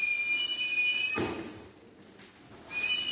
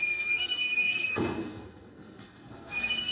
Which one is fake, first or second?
second